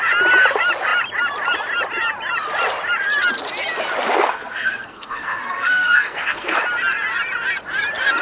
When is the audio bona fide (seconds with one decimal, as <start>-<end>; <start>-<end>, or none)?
0.0-4.1; 6.6-8.2